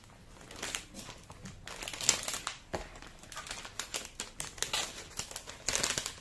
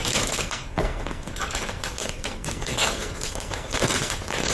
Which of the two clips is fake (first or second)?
second